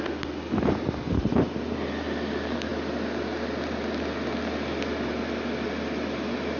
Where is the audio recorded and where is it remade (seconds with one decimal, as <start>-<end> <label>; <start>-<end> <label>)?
0.0-6.6 recorded